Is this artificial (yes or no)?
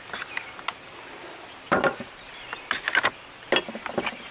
no